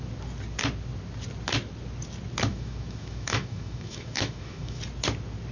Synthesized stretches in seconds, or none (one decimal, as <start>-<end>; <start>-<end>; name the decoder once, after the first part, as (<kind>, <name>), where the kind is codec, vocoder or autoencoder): 2.5-4.8 (autoencoder, DAC-VAE)